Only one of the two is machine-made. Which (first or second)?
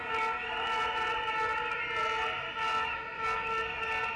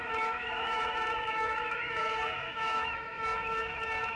second